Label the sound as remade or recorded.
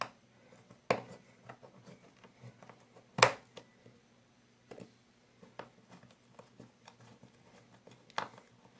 recorded